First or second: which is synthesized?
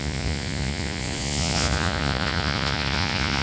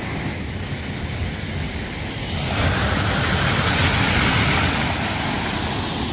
first